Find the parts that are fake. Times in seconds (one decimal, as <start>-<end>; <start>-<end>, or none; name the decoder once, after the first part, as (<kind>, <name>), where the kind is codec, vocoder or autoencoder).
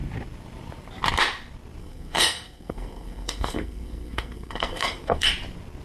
1.8-5.3 (codec, SNAC)